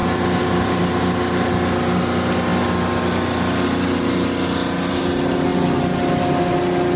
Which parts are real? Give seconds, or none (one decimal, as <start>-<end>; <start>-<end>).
0.8-7.0